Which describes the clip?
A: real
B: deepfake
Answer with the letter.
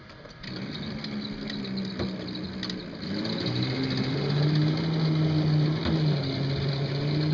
A